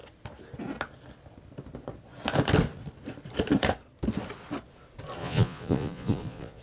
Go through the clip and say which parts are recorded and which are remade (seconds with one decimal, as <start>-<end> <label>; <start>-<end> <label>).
0.0-5.2 recorded; 5.2-6.6 remade